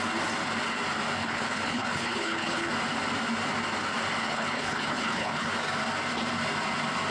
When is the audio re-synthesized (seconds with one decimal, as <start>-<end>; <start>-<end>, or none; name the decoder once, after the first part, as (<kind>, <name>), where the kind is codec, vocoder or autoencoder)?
1.2-2.7 (codec, HILCodec); 4.2-5.5